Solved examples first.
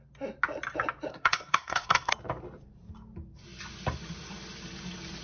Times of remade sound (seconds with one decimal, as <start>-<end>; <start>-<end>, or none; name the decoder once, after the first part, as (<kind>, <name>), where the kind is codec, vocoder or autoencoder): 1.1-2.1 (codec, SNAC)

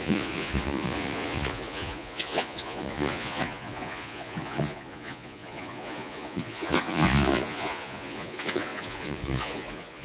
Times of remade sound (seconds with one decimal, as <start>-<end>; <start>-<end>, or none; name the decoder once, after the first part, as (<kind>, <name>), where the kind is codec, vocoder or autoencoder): 0.0-10.0 (vocoder, Vocos)

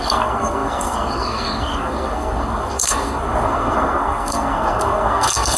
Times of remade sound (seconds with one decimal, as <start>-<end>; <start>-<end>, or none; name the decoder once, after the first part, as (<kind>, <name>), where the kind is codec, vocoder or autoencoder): 0.0-5.6 (codec, SNAC)

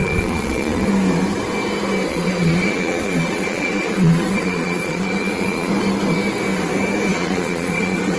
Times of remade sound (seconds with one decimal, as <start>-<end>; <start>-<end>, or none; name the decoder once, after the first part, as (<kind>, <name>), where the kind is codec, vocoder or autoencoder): 0.0-0.9 (vocoder, Vocos); 2.1-5.7; 7.1-8.2